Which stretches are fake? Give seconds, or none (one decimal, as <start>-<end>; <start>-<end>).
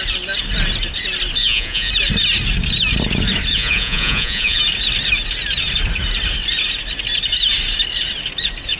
1.4-1.9; 3.5-4.6